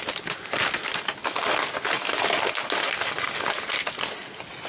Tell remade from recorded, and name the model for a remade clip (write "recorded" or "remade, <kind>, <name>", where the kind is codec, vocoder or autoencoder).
recorded